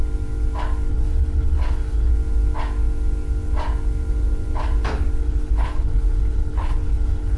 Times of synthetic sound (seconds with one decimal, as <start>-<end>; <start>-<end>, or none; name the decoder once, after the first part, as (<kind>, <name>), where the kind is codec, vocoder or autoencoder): 0.9-2.1 (codec, HILCodec); 5.2-7.4